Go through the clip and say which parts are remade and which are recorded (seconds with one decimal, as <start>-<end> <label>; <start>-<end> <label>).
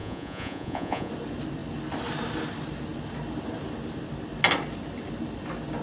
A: 0.0-1.1 remade; 1.1-5.8 recorded